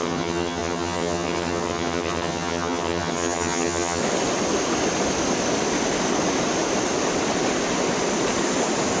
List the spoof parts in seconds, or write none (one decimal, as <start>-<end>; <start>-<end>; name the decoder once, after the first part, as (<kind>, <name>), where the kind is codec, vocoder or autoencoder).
0.0-4.0 (vocoder, HiFi-GAN)